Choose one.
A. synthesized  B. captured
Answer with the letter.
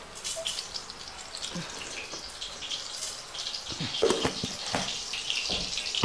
B